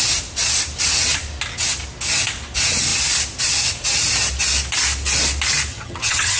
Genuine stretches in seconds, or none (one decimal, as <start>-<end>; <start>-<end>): 0.0-5.7